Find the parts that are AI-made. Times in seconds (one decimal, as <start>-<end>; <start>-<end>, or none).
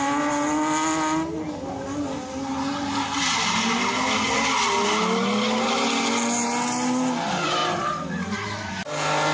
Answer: none